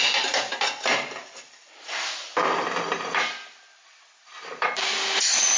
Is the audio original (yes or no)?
yes